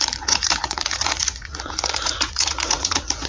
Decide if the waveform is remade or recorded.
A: remade